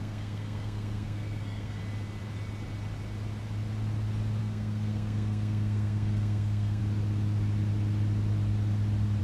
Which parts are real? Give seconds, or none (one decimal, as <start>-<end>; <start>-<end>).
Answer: 1.8-4.4; 6.8-9.2